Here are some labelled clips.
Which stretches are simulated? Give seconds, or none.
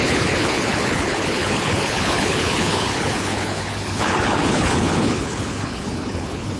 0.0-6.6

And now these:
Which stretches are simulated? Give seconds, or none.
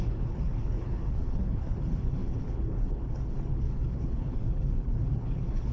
0.0-5.7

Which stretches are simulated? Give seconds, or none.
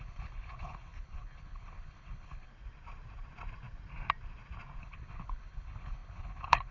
0.0-2.5; 4.8-6.7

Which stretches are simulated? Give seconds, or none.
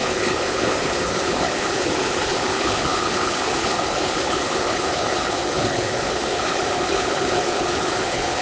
0.0-8.4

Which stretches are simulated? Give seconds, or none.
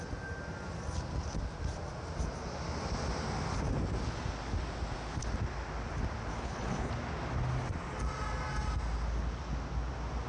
6.3-6.9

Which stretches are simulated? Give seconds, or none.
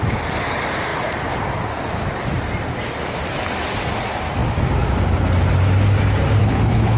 6.4-7.0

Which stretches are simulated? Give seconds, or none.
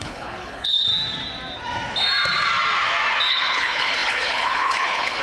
0.0-0.9; 3.3-5.2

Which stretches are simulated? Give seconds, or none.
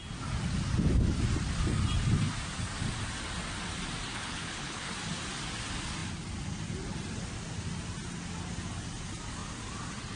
4.1-4.9